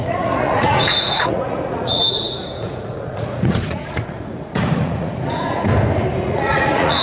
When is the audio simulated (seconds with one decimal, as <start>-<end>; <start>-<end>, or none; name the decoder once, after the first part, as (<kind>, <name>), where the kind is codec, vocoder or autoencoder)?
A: 0.0-5.7 (vocoder, Vocos); 6.2-7.0